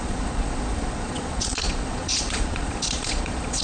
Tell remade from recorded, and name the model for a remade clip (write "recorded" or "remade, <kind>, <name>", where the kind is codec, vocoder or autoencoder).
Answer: remade, vocoder, Vocos